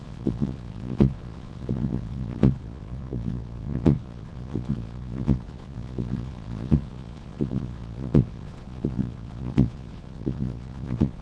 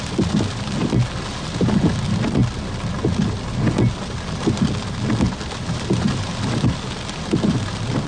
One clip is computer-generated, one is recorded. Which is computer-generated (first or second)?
first